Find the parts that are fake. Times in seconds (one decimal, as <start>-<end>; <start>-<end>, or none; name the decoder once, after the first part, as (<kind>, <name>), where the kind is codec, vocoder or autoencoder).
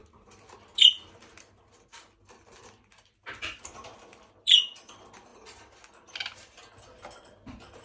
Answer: none